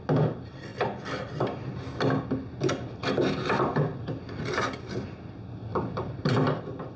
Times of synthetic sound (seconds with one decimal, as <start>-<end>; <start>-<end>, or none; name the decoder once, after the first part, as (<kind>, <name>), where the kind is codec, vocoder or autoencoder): 5.7-6.6 (vocoder, BigVGAN v2)